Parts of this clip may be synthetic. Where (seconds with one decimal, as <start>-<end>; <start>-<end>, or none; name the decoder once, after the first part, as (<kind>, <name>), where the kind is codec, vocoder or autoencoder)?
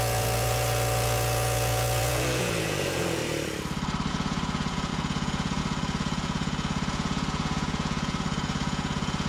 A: 0.0-3.2 (vocoder, Vocos); 4.1-9.3